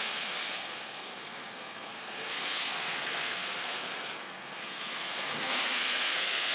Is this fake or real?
fake